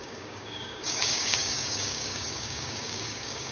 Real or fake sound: fake